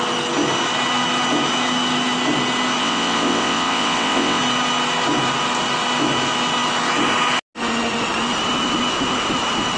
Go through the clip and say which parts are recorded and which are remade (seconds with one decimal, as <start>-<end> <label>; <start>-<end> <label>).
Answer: 0.0-2.8 recorded; 2.8-4.4 remade; 4.4-9.8 recorded